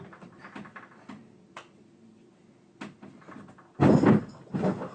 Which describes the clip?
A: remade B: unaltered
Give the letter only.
B